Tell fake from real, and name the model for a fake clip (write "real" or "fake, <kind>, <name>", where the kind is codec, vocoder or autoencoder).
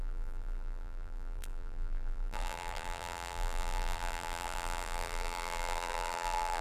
fake, vocoder, BigVGAN v2